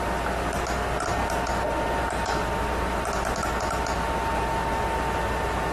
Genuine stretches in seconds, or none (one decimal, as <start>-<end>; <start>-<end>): 0.0-5.7